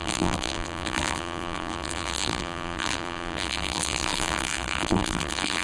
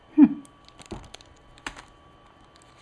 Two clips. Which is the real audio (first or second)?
second